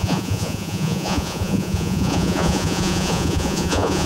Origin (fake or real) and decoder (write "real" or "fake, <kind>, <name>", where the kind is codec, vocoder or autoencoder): fake, vocoder, Vocos